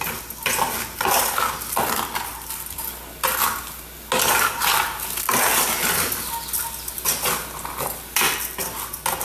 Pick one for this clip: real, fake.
real